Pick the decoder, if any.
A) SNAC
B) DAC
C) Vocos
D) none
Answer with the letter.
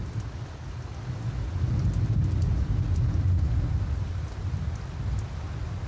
D